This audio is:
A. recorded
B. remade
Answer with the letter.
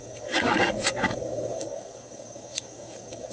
B